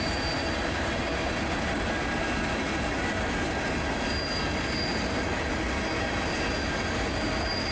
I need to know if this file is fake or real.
real